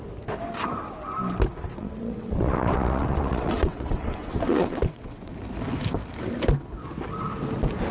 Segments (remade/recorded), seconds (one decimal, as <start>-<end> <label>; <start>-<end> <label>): 0.0-1.7 recorded; 1.7-5.3 remade; 5.3-7.9 recorded